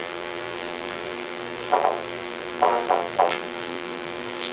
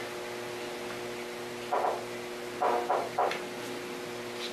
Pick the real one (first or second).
second